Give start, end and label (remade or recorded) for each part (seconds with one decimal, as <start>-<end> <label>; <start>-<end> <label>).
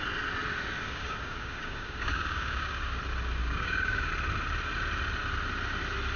0.0-0.8 recorded; 0.8-3.0 remade; 3.0-3.4 recorded; 3.4-4.1 remade; 4.1-6.2 recorded